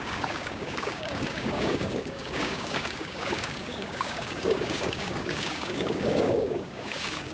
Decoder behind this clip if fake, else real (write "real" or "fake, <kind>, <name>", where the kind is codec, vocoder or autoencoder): fake, codec, DAC